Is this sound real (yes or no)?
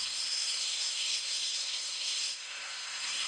no